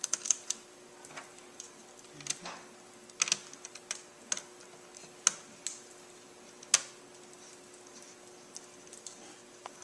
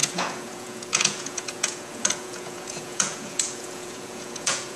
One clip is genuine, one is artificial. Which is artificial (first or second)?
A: second